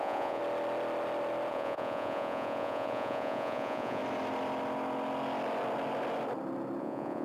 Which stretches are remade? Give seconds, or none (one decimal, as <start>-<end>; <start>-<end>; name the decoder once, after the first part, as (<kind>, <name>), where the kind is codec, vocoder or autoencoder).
0.0-0.4 (vocoder, Vocos); 1.5-4.0; 6.8-7.2